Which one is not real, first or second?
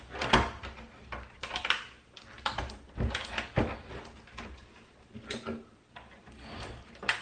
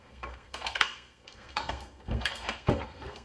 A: second